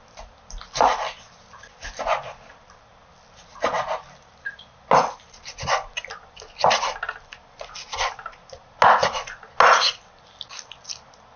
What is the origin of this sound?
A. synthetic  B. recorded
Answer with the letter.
B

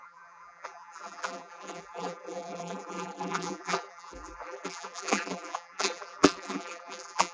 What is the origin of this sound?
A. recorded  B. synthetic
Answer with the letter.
B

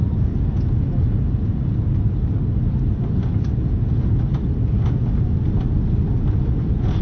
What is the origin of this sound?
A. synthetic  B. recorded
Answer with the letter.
B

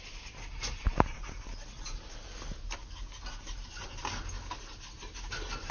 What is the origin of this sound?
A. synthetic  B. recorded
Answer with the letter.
B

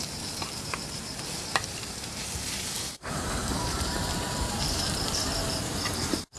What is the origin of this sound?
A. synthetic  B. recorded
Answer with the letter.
A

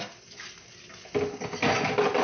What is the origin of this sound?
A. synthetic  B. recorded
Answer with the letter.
B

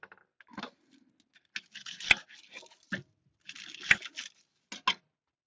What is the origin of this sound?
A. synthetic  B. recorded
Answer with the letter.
B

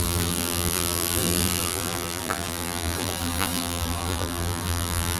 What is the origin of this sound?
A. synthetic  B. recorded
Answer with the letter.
A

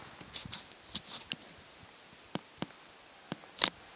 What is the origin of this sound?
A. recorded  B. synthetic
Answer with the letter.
A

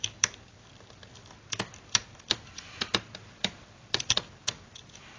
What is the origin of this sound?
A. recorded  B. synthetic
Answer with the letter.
B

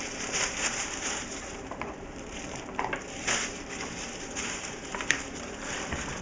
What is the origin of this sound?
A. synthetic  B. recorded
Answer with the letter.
A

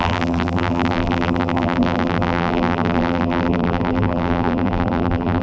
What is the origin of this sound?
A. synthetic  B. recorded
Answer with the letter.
A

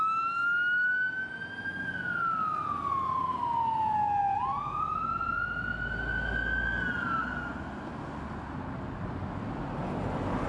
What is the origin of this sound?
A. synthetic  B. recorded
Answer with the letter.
B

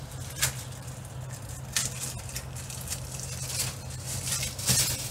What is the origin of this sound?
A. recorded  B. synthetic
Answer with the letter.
A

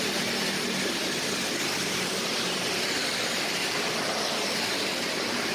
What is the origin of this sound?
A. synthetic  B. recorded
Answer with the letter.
A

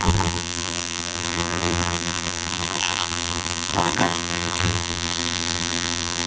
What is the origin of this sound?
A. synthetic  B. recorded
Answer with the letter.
A